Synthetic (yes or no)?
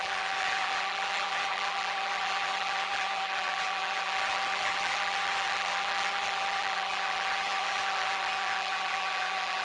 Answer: yes